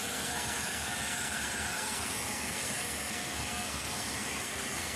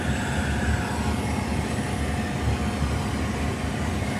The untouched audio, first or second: second